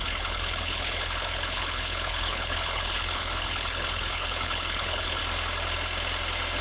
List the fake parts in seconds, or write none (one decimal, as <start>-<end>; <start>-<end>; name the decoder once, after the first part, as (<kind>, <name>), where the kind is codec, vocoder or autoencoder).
0.0-5.2 (codec, HILCodec)